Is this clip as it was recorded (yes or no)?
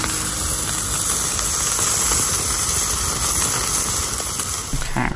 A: yes